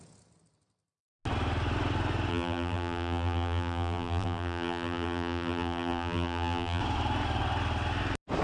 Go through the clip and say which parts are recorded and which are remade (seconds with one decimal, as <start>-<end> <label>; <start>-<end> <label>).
0.0-2.3 recorded; 2.3-6.8 remade; 6.8-8.4 recorded